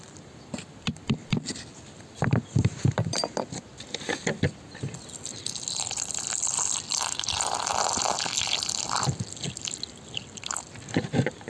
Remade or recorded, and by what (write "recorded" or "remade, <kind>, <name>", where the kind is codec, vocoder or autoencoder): recorded